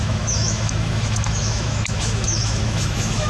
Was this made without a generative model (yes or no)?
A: no